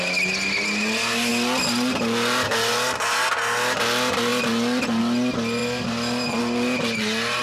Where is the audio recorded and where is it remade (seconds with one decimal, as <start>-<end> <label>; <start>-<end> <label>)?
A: 0.0-7.4 recorded